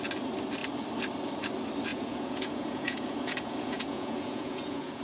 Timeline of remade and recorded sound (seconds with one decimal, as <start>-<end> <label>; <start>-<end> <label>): 0.0-1.9 recorded; 1.9-5.0 remade